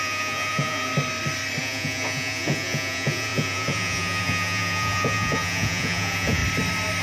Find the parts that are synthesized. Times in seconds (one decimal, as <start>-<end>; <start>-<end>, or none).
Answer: 0.0-0.9; 1.6-6.4